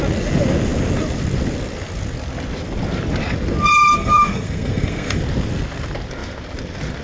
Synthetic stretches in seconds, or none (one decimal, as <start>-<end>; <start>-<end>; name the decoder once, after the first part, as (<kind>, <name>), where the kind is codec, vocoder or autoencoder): 3.9-5.2 (codec, SNAC)